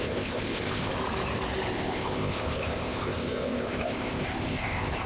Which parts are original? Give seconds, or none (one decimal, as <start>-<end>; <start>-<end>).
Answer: 0.9-1.7